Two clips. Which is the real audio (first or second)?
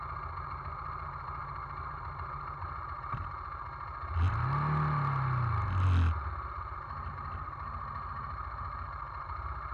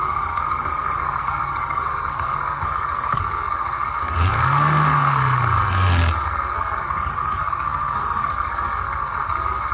first